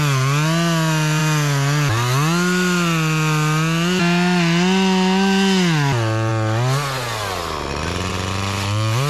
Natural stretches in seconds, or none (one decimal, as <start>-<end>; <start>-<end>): 0.0-9.1

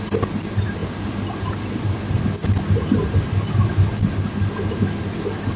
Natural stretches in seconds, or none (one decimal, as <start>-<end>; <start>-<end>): 0.0-5.6

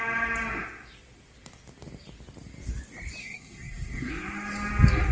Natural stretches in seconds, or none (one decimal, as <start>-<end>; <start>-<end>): 0.0-3.2; 4.1-5.1

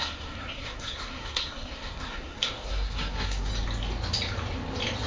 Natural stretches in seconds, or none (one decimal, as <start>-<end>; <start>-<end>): 3.5-5.1

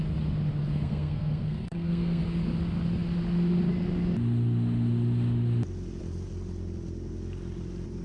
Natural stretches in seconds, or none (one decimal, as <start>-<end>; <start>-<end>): 0.0-0.6; 2.2-8.0

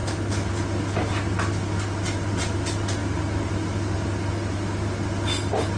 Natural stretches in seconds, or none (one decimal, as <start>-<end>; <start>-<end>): 0.0-5.8